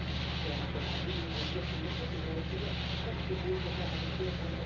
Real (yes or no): yes